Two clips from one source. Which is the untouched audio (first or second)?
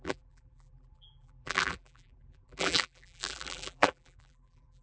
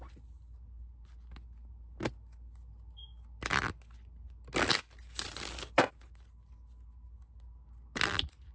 second